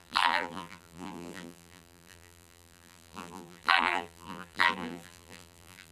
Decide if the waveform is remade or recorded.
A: remade